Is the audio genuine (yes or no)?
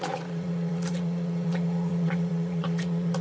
no